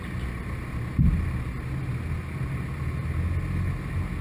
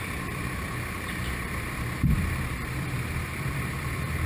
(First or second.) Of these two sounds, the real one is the first